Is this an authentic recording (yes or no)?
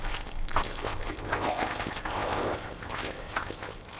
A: no